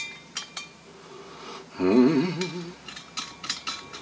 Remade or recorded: recorded